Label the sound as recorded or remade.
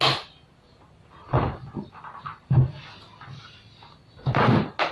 recorded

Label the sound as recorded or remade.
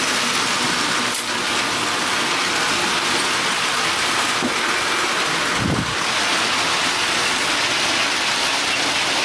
recorded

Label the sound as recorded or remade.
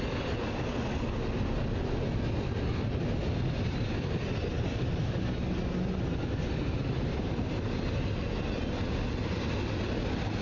recorded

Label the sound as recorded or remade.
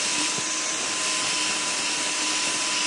recorded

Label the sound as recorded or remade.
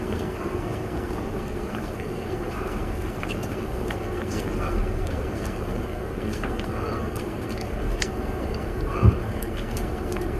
remade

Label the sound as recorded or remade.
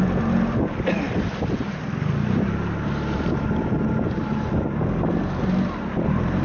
recorded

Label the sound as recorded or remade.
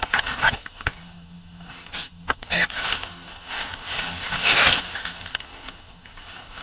remade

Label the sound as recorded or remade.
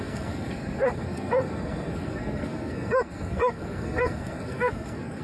remade